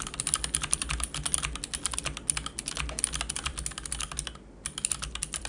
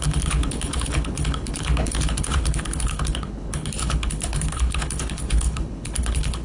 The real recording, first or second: first